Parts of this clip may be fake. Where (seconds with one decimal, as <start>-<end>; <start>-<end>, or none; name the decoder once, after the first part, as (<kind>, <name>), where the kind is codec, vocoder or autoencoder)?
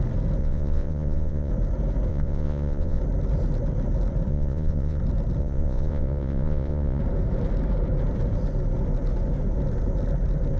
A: 0.4-1.5 (vocoder, Vocos); 2.1-3.0; 4.3-5.0; 5.4-7.0